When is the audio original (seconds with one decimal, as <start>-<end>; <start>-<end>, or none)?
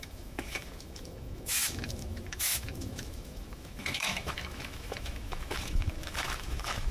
none